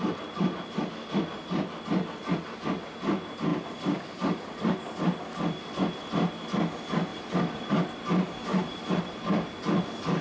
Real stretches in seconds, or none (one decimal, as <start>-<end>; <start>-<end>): 0.0-3.5; 6.1-7.1; 7.7-8.5; 9.1-10.2